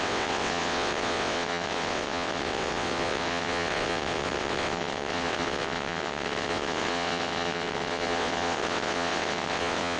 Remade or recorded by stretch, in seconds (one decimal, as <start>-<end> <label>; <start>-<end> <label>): 0.0-10.0 remade